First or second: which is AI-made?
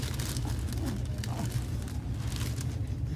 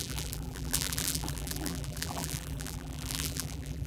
second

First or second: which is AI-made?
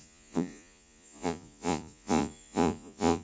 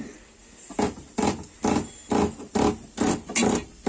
first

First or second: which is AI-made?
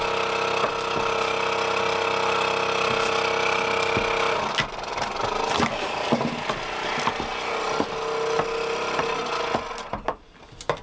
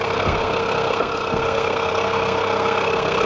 second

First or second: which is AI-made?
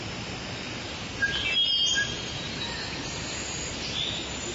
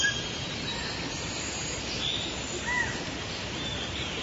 second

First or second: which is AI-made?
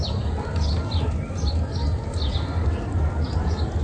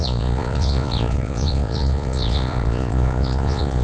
second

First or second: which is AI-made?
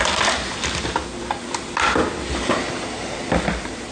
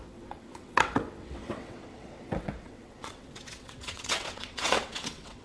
second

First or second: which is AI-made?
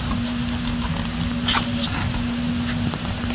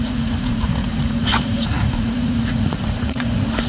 second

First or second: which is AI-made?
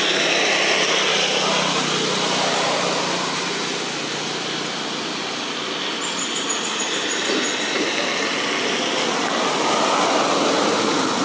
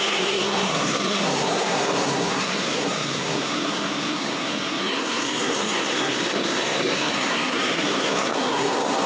second